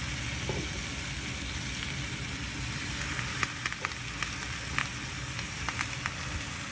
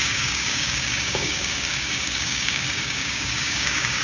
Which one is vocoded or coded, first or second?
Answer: second